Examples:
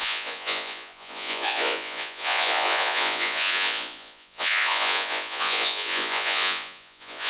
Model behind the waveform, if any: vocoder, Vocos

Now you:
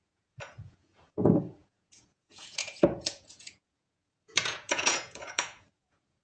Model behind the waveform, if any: vocoder, Vocos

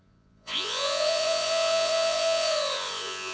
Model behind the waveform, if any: vocoder, Vocos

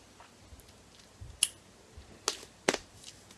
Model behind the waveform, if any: none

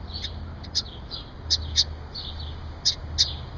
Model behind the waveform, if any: none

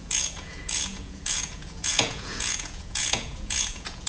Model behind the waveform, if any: vocoder, Vocos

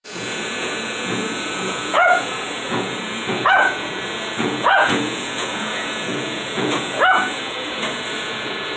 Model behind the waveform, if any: vocoder, Vocos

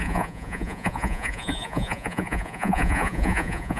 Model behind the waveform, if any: vocoder, Vocos